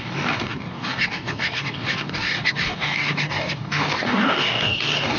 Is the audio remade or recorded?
remade